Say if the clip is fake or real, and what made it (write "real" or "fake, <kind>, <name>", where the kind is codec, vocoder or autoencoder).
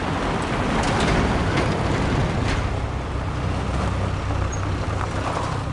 real